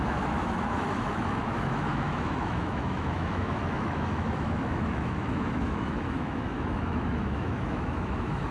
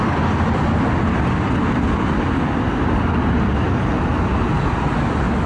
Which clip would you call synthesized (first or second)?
first